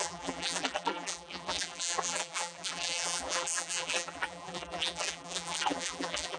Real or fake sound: fake